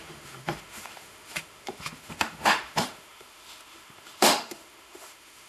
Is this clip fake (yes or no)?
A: yes